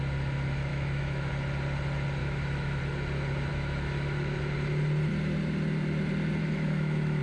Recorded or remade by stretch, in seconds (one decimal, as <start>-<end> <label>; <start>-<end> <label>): 0.0-0.7 recorded; 0.7-1.3 remade; 1.3-2.2 recorded; 2.2-2.8 remade; 2.8-3.5 recorded; 3.5-4.4 remade; 4.4-6.4 recorded; 6.4-7.2 remade